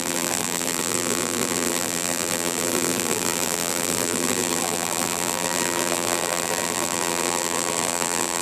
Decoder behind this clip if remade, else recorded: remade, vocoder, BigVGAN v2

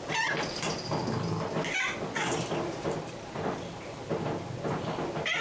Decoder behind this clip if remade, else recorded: recorded